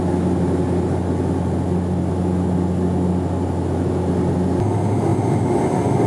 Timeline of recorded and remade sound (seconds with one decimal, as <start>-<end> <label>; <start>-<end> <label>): 0.0-5.1 recorded; 5.1-6.1 remade